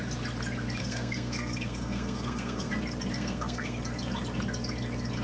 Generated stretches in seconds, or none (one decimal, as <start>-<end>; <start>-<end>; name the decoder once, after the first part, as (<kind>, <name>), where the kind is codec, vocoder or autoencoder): 0.8-2.7 (codec, SNAC); 3.1-3.8